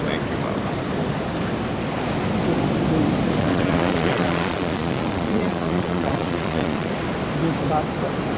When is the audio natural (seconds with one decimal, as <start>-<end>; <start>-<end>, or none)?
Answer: 0.0-3.4; 6.9-8.4